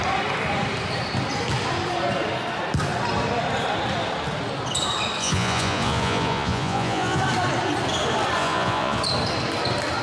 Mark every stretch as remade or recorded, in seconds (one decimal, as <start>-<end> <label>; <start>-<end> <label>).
0.0-5.2 recorded; 5.2-7.2 remade; 7.2-8.4 recorded; 8.4-9.0 remade; 9.0-10.0 recorded